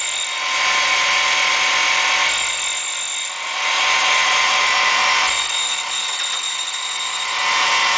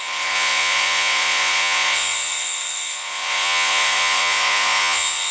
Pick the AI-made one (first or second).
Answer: second